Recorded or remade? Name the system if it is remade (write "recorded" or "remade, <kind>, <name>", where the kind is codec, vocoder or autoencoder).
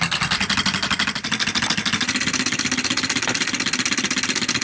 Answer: recorded